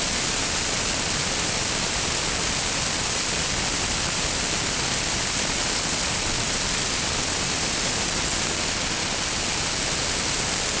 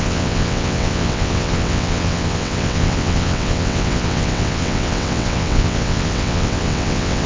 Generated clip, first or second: second